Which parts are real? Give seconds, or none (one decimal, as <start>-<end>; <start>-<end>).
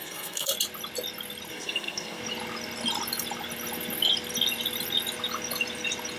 0.5-1.5; 2.2-6.2